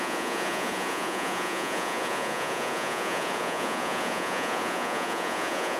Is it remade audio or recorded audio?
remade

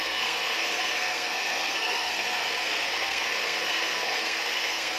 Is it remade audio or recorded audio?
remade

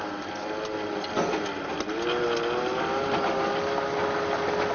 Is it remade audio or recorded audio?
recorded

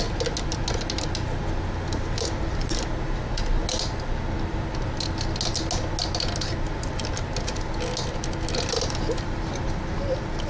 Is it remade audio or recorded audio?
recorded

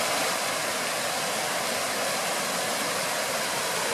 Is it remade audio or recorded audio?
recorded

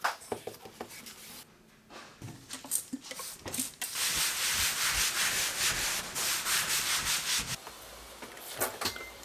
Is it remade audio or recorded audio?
recorded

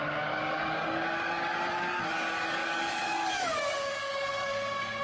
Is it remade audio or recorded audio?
remade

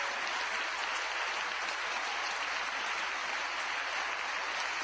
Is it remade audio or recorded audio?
recorded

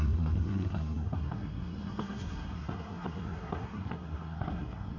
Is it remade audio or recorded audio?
remade